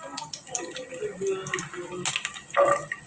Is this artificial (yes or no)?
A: no